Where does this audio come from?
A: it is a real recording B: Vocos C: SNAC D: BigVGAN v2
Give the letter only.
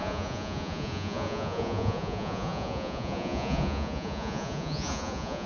B